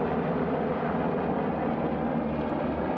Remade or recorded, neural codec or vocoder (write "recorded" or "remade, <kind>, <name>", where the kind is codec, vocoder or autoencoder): recorded